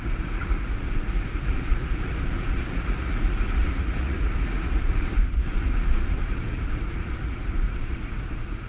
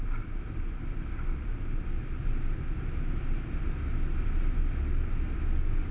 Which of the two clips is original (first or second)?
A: second